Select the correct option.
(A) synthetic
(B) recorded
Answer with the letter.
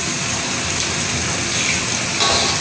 B